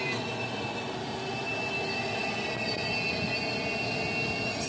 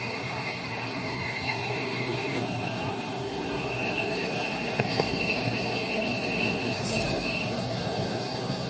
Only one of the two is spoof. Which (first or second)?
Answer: second